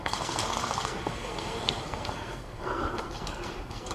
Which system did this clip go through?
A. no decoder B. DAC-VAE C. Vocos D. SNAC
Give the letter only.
D